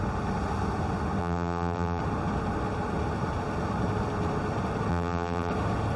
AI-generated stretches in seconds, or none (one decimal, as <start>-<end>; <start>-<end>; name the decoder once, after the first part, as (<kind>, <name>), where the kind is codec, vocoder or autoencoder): 1.2-2.0 (vocoder, BigVGAN v2); 4.9-5.5

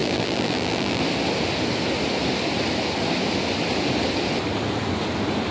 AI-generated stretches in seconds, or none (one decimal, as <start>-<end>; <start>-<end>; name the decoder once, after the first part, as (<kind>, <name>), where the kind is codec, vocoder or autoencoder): 0.0-1.0 (vocoder, BigVGAN v2)

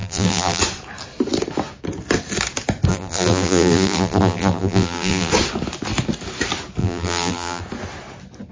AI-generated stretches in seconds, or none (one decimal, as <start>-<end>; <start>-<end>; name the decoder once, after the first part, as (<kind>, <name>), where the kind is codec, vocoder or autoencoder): 0.0-0.6 (vocoder, BigVGAN v2); 2.9-5.3; 6.8-7.6

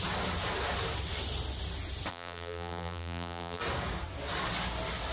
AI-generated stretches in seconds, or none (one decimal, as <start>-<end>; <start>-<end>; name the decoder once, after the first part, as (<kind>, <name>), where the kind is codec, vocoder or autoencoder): 2.1-3.6 (vocoder, BigVGAN v2)